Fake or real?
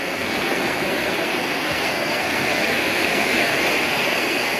fake